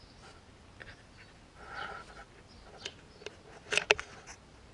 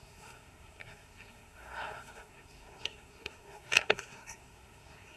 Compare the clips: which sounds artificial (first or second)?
second